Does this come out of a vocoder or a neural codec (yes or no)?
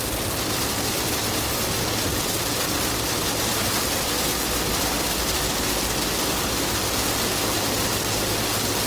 no